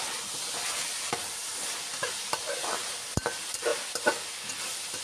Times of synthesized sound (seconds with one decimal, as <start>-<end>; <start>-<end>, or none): none